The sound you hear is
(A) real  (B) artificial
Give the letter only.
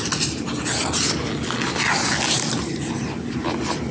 A